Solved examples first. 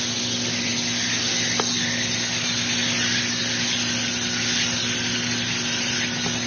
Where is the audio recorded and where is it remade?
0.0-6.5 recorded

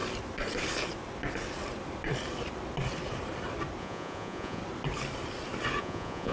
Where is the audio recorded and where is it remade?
0.0-3.8 recorded; 3.8-4.6 remade; 4.6-5.8 recorded; 5.8-6.3 remade

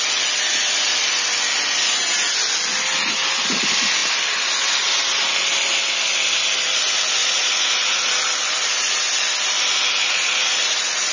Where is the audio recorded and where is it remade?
0.0-7.2 recorded; 7.2-8.1 remade; 8.1-10.0 recorded; 10.0-11.1 remade

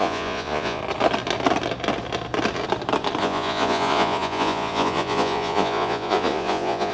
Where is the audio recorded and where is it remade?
0.0-0.8 remade; 0.8-3.2 recorded; 3.2-6.9 remade

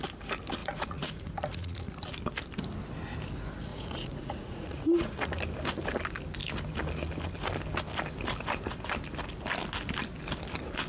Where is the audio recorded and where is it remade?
0.0-0.6 recorded; 0.6-1.9 remade; 1.9-3.7 recorded; 3.7-5.4 remade; 5.4-10.9 recorded

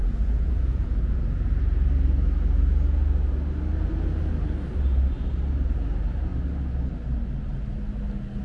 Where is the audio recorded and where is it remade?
0.0-1.2 remade; 1.2-8.4 recorded